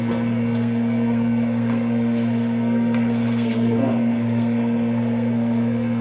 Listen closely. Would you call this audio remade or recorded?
remade